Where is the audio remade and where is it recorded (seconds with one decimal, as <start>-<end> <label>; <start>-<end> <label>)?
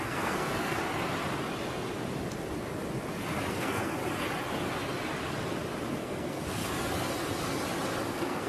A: 0.0-0.8 remade; 0.8-3.5 recorded; 3.5-4.0 remade; 4.0-6.0 recorded; 6.0-6.6 remade; 6.6-8.1 recorded; 8.1-8.5 remade